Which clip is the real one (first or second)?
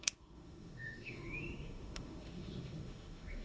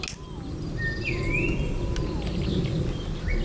second